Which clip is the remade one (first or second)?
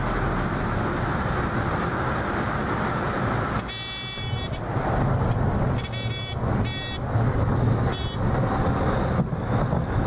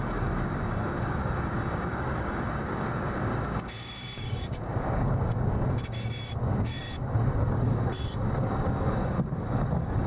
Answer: second